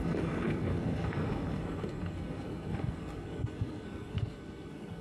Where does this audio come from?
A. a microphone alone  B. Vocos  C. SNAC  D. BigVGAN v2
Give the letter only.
C